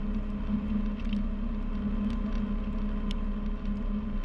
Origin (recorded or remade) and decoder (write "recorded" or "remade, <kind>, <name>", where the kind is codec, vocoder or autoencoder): recorded